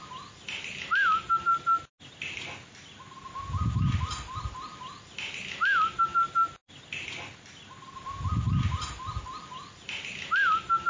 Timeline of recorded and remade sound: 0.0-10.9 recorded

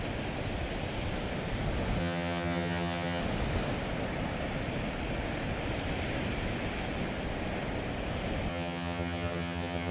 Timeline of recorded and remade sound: 0.0-2.0 recorded; 2.0-3.2 remade; 3.2-8.5 recorded; 8.5-9.9 remade

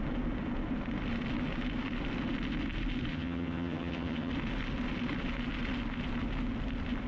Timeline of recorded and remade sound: 0.0-3.1 recorded; 3.1-4.3 remade; 4.3-7.1 recorded